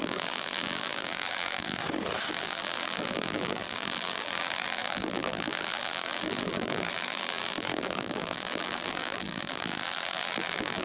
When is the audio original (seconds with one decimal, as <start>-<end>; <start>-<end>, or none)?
1.8-2.3